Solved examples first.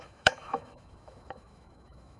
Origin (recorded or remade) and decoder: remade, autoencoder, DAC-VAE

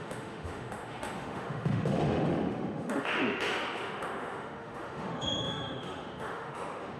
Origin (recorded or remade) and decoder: remade, autoencoder, DAC-VAE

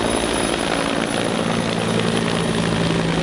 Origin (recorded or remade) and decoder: recorded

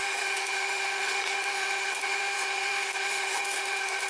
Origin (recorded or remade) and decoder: remade, autoencoder, DAC-VAE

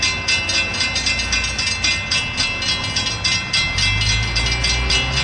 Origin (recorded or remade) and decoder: recorded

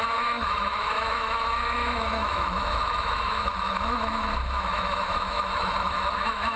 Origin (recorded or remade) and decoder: remade, autoencoder, DAC-VAE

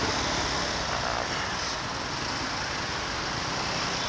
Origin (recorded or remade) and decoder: recorded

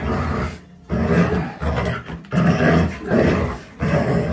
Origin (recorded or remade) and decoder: recorded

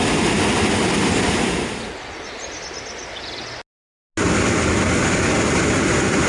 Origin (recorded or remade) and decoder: recorded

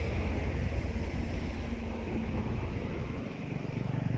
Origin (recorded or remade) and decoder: remade, autoencoder, DAC-VAE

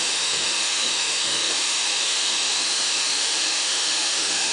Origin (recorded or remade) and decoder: remade, autoencoder, DAC-VAE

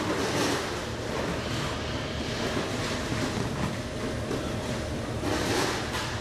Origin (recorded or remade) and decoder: recorded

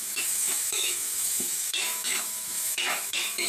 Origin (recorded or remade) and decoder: remade, autoencoder, DAC-VAE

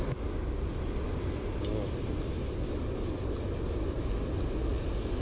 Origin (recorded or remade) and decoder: recorded